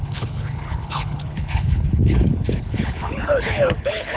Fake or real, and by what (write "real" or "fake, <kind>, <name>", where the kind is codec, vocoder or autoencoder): fake, codec, HILCodec